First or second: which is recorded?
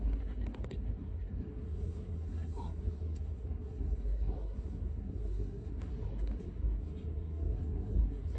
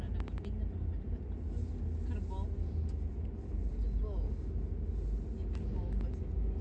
second